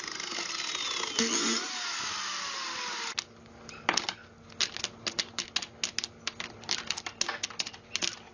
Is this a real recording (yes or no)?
yes